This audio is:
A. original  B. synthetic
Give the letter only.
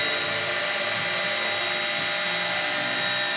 A